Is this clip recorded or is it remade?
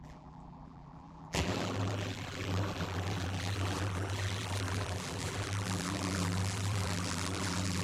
remade